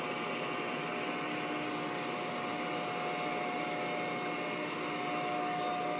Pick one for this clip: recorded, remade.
recorded